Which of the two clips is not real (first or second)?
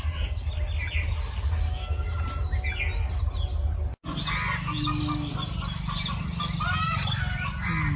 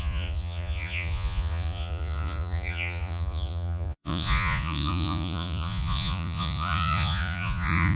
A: second